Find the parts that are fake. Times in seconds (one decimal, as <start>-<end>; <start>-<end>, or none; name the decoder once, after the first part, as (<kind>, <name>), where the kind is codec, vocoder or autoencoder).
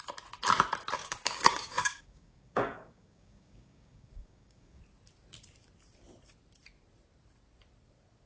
1.0-4.8 (codec, DAC)